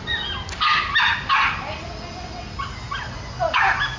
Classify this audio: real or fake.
real